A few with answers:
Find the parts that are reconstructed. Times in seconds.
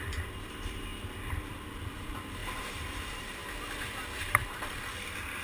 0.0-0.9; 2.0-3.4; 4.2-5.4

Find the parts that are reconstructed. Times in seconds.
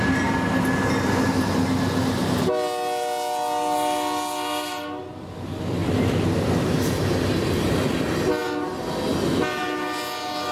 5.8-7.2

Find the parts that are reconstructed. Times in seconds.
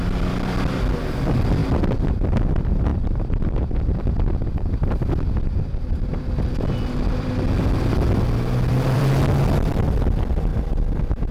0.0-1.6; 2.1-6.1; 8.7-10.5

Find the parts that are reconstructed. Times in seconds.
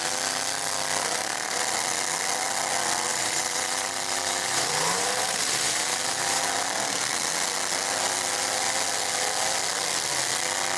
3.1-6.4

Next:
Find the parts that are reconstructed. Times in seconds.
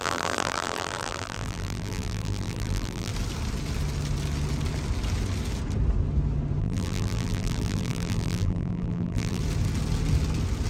0.0-3.1; 6.6-9.4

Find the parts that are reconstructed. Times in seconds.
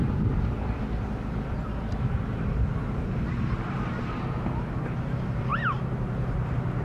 0.0-6.8